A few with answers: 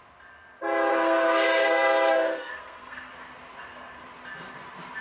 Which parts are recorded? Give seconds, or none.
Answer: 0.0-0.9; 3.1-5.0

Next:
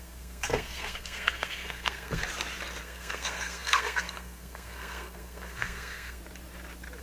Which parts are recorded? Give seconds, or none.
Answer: 2.2-2.8; 6.2-7.0

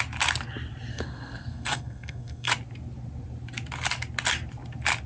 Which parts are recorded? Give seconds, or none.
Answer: 0.0-0.9; 2.5-5.1

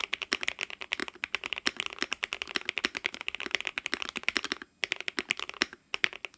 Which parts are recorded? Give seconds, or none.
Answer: 0.0-6.4

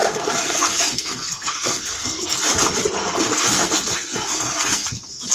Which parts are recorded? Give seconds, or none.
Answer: 2.4-3.0

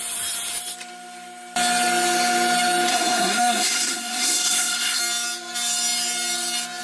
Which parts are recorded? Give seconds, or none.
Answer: 0.0-2.9; 5.0-6.8

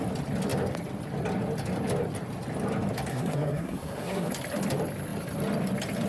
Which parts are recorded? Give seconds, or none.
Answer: 0.0-3.1; 4.3-6.1

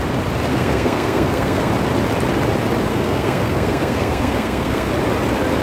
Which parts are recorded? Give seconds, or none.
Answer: 0.0-0.5; 1.7-2.9; 4.9-5.6